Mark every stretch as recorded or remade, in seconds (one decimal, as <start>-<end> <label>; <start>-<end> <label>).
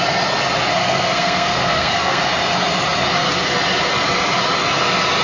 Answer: 0.0-0.7 recorded; 0.7-2.2 remade; 2.2-5.2 recorded